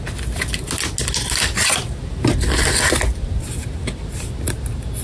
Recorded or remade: recorded